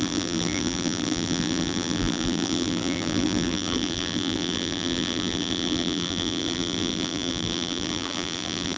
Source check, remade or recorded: remade